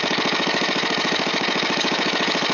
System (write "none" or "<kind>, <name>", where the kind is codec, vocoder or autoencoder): autoencoder, DAC-VAE